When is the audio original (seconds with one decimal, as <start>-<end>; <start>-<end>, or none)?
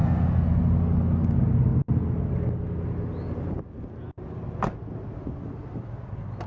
0.0-6.5